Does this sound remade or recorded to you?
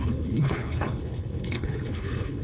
remade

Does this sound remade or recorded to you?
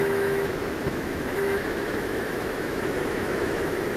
remade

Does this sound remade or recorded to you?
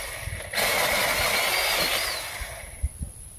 recorded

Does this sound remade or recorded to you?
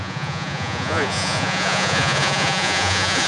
remade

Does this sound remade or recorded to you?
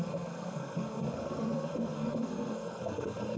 remade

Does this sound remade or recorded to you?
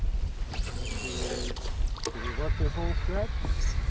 recorded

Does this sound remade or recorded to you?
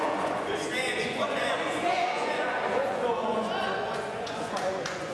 remade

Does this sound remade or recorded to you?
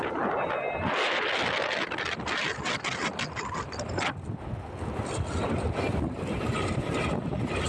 recorded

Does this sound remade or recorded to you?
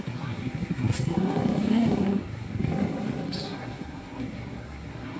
remade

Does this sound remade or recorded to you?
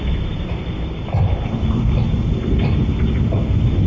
recorded